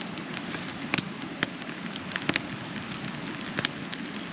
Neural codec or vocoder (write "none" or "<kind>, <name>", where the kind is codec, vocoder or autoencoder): none